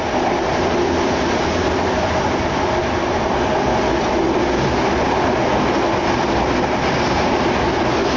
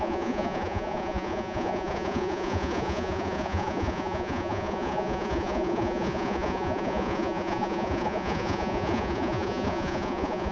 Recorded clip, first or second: first